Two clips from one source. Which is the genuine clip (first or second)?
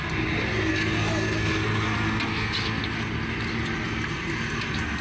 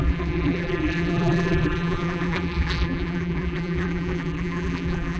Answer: first